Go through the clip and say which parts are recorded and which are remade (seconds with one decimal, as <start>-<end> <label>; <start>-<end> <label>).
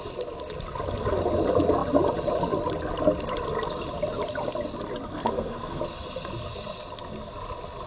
0.0-5.1 recorded; 5.1-5.8 remade; 5.8-7.9 recorded